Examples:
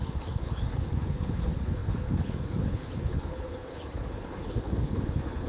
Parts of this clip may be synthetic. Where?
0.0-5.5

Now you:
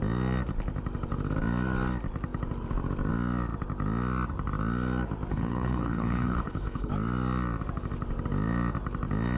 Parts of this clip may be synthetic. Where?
5.3-6.9

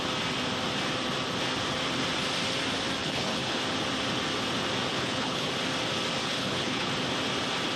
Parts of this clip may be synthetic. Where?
3.0-3.6; 4.9-5.5; 6.2-6.9

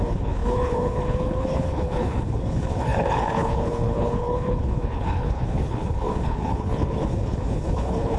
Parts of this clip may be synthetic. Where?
0.0-8.2